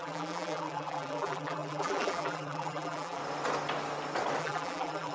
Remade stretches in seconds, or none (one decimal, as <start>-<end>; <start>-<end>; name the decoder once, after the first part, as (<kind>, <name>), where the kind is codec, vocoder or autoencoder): 0.0-3.2 (vocoder, BigVGAN v2); 4.4-5.1